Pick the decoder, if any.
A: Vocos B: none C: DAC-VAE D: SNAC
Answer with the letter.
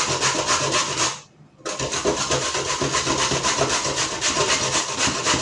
B